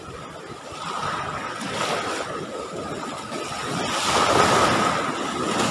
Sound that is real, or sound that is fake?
real